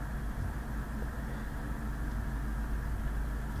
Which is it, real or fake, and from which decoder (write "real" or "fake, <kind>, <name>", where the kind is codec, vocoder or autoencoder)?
real